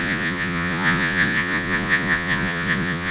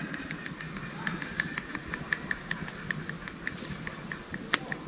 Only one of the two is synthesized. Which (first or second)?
first